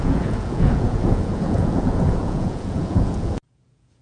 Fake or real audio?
fake